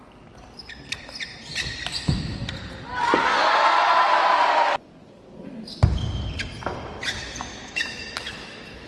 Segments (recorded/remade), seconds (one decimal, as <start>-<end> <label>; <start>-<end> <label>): 0.0-7.5 recorded; 7.5-8.9 remade